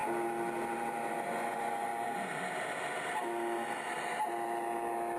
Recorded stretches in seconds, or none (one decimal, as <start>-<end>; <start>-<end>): 0.0-1.1; 1.9-5.2

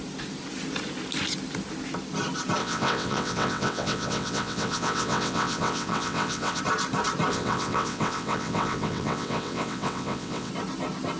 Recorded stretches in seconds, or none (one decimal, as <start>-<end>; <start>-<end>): 0.0-2.6; 6.6-7.3; 10.5-11.2

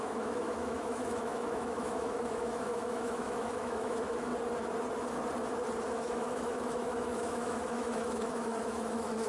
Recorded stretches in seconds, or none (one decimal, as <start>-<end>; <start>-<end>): 4.3-5.8

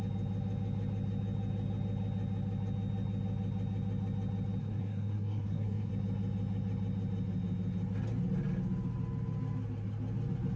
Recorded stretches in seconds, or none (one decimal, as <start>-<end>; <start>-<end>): 0.0-4.6; 5.9-10.6

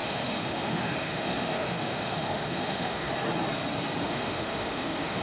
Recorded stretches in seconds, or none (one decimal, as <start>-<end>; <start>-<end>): 3.1-4.0

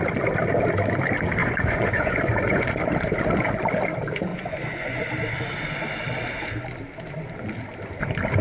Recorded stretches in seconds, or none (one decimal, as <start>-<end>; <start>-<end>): 0.0-1.4; 2.7-4.3; 5.0-8.4

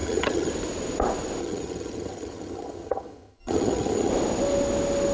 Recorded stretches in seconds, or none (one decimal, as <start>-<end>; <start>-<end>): 0.5-1.4; 4.1-5.1

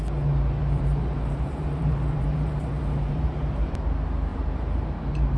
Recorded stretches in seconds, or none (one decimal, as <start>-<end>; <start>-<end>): 0.0-0.6; 3.7-4.3